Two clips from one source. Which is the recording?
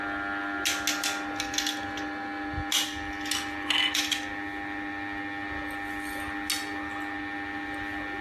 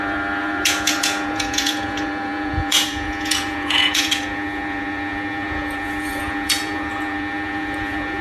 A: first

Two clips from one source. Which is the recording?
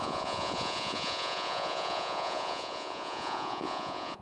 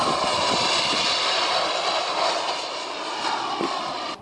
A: second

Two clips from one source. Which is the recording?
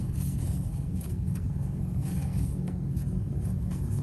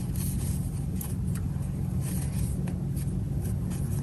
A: second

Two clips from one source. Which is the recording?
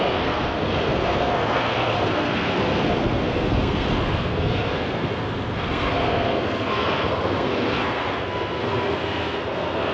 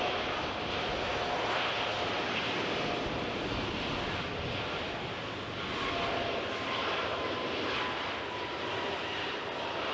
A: second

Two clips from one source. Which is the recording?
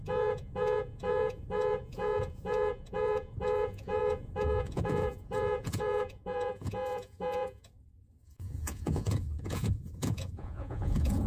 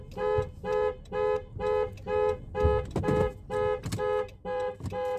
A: second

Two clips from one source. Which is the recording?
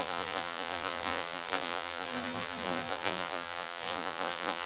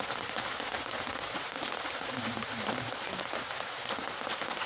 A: second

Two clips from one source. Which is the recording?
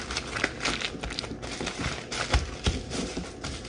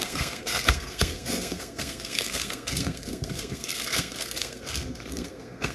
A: first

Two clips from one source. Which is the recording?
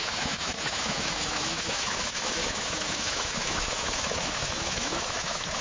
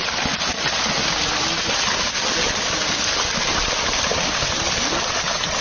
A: second